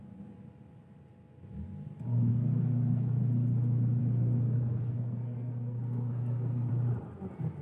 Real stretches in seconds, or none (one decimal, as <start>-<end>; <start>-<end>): 0.0-2.3; 3.2-4.0; 6.7-7.6